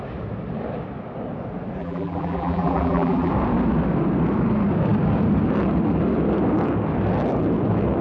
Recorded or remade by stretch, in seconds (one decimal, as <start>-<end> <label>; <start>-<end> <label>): 0.0-1.8 recorded; 1.8-3.3 remade; 3.3-8.0 recorded